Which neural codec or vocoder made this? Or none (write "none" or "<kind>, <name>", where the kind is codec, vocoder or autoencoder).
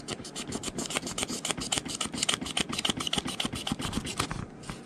none